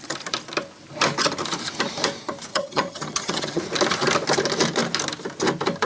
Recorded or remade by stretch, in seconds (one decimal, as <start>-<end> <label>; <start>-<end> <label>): 0.0-2.5 recorded; 2.5-3.6 remade; 3.6-5.9 recorded